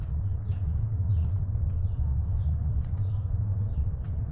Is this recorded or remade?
remade